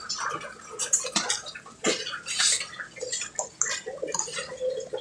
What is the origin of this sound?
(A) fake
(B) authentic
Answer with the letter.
B